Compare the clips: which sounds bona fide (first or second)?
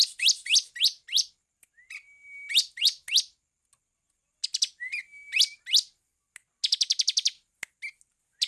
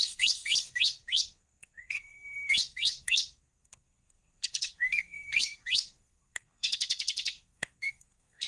first